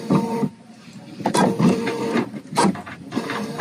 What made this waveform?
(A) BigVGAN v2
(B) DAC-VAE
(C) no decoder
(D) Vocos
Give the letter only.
A